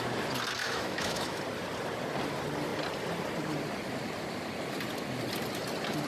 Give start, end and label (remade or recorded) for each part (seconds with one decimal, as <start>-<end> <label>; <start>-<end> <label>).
0.0-0.6 recorded; 0.6-1.4 remade; 1.4-6.1 recorded